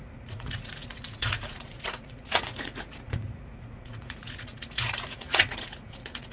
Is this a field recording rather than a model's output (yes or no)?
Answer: no